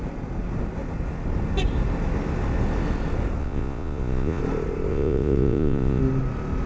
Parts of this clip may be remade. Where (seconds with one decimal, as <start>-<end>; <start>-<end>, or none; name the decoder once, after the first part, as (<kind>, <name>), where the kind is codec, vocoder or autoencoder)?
3.4-4.4 (vocoder, Vocos); 4.9-6.0